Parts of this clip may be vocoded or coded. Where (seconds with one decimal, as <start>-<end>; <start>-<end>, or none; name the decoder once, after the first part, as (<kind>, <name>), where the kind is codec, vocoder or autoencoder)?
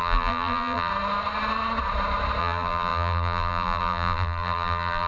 0.0-0.9 (vocoder, BigVGAN v2); 2.4-5.1